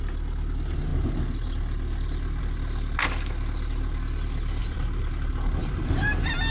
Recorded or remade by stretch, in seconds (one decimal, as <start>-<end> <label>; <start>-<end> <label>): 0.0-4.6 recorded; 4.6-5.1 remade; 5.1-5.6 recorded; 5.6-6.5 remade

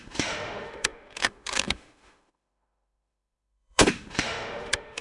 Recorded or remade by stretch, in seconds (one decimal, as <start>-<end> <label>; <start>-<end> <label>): 0.0-5.0 remade

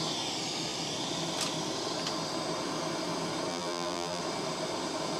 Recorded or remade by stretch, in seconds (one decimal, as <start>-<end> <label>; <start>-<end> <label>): 0.0-3.5 recorded; 3.5-4.2 remade; 4.2-5.2 recorded

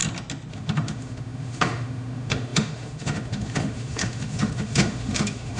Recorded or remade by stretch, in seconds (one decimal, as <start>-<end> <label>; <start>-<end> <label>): 0.0-0.5 recorded; 0.5-5.6 remade

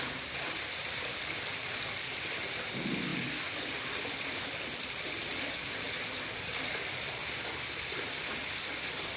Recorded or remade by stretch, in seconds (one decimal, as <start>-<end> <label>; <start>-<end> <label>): 0.0-9.2 recorded